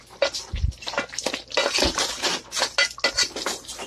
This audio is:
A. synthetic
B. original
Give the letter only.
B